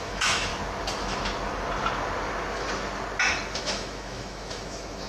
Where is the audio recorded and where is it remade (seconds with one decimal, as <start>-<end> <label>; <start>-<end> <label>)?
0.0-0.5 remade; 0.5-3.6 recorded; 3.6-5.1 remade